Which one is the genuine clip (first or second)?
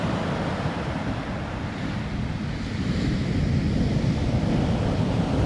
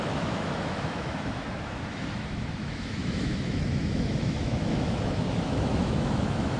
first